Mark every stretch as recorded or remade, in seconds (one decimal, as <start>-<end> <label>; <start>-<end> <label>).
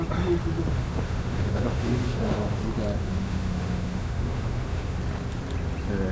0.0-0.7 recorded; 0.7-2.6 remade; 2.6-3.0 recorded; 3.0-5.0 remade; 5.0-6.1 recorded